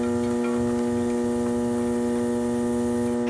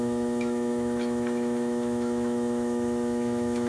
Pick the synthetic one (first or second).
second